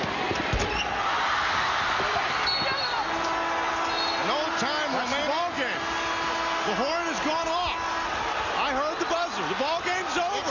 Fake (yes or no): no